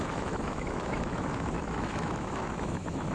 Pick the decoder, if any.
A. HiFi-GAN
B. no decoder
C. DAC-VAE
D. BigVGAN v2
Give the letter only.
C